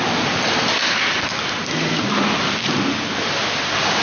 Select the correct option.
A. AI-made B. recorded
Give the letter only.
B